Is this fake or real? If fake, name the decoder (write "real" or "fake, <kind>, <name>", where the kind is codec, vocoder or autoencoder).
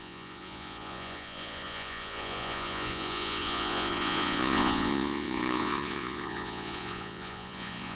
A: fake, vocoder, Vocos